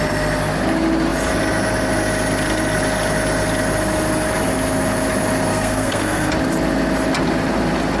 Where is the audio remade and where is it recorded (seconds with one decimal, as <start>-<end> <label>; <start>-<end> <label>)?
0.0-5.5 recorded; 5.5-6.3 remade; 6.3-8.0 recorded